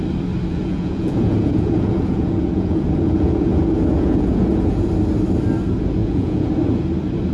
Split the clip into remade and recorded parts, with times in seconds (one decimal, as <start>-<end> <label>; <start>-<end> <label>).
0.0-0.5 recorded; 0.5-4.9 remade; 4.9-6.0 recorded; 6.0-6.5 remade; 6.5-7.3 recorded